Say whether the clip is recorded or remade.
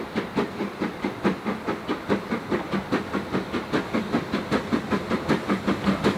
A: recorded